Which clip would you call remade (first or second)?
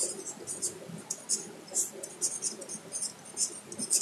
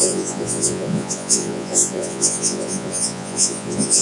second